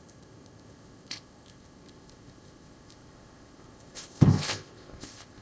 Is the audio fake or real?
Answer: fake